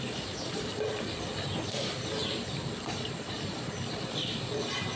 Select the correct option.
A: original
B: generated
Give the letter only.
A